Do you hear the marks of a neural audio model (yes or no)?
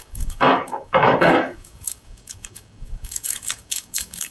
yes